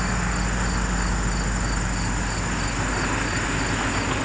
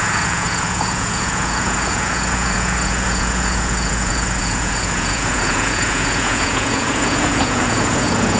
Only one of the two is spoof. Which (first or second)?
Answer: second